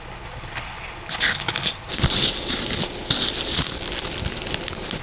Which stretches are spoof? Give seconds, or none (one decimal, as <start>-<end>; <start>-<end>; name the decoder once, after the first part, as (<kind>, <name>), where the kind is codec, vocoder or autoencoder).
0.0-1.9 (codec, HILCodec)